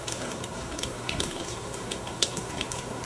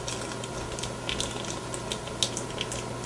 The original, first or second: second